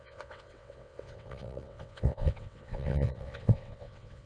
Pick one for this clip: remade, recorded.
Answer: remade